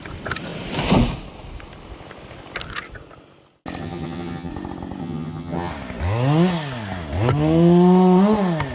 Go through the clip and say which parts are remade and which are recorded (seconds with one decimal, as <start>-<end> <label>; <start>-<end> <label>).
0.0-3.8 recorded; 3.8-4.5 remade; 4.5-5.0 recorded; 5.0-5.7 remade; 5.7-8.7 recorded